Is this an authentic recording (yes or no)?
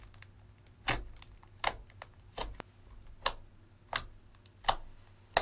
yes